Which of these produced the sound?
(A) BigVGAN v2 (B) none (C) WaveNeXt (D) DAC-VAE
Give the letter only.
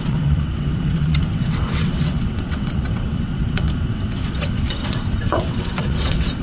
C